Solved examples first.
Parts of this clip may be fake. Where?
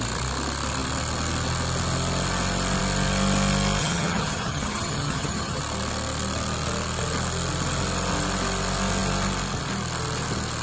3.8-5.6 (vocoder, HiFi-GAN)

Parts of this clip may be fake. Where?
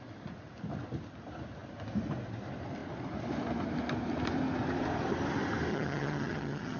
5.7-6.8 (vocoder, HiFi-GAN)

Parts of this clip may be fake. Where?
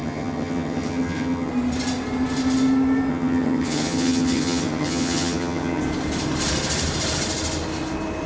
0.0-1.5 (vocoder, HiFi-GAN); 3.1-5.8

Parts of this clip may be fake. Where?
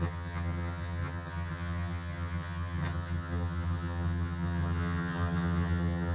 0.0-6.1 (vocoder, HiFi-GAN)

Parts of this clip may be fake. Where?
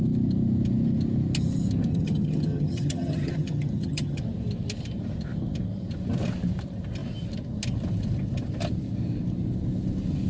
1.9-4.2 (vocoder, HiFi-GAN)